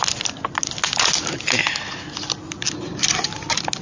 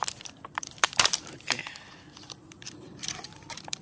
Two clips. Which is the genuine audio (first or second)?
first